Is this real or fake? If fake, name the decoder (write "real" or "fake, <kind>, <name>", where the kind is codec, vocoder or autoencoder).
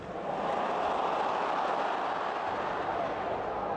real